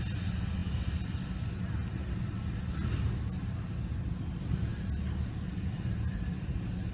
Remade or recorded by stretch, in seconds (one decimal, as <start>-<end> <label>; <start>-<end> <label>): 0.0-6.9 recorded